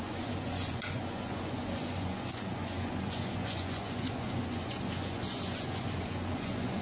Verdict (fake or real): fake